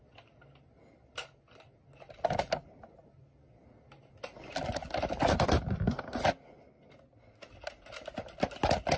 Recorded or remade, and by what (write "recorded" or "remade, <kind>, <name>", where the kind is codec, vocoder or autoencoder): recorded